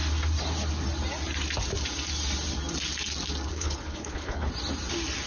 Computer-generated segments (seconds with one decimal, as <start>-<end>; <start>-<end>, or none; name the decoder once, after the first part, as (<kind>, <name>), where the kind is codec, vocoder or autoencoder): 3.5-4.5 (codec, HILCodec)